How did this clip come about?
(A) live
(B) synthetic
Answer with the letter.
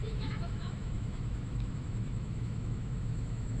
B